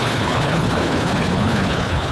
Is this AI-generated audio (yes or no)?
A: yes